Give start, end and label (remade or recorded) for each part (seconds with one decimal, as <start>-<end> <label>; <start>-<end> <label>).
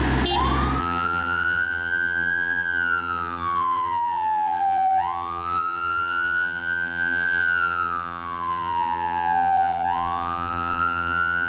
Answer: 0.0-0.8 recorded; 0.8-11.5 remade